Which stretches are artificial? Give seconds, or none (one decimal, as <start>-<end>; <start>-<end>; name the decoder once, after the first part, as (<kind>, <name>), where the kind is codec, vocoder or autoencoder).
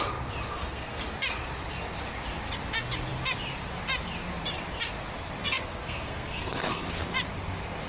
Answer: 0.5-1.0 (codec, SNAC); 5.4-6.8